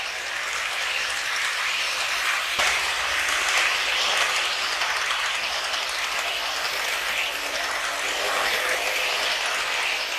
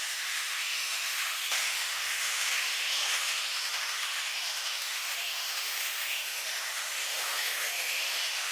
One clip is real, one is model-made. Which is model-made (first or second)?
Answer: second